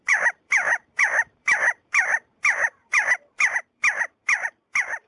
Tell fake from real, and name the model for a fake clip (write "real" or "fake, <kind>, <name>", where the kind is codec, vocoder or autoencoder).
fake, vocoder, BigVGAN v2